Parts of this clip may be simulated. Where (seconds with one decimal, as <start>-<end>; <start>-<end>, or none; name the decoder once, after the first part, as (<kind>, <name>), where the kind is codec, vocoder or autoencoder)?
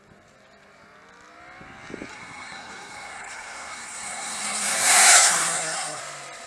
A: 2.1-6.0 (codec, SNAC)